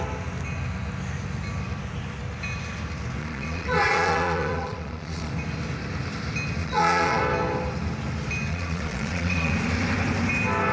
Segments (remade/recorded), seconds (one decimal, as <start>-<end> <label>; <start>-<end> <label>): 0.0-3.2 recorded; 3.2-5.3 remade; 5.3-6.6 recorded; 6.6-7.2 remade; 7.2-8.5 recorded; 8.5-9.5 remade; 9.5-10.7 recorded